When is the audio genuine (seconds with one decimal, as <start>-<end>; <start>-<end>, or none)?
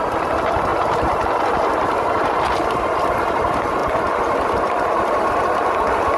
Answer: 0.0-6.2